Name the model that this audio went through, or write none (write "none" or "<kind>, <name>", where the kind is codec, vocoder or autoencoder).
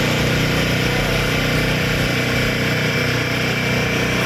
none